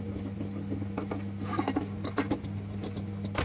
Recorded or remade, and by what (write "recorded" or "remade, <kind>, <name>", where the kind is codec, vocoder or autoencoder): recorded